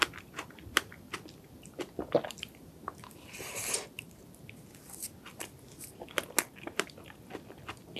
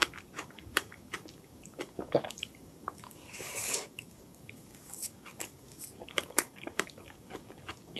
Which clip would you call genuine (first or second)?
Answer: first